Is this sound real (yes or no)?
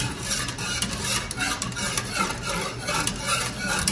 yes